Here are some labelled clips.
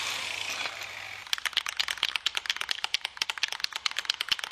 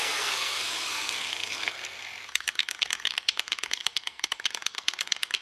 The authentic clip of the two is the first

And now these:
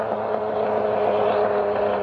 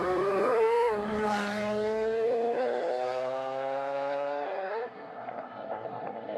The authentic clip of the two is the first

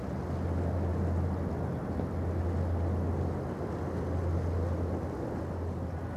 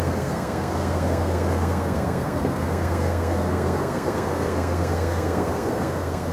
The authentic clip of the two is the first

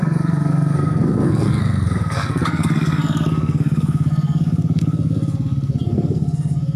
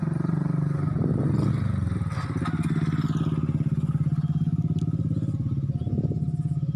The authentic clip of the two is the second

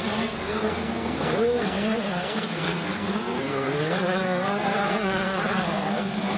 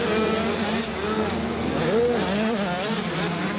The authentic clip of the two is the second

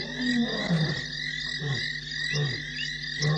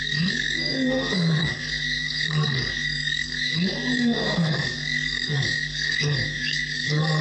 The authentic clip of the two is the first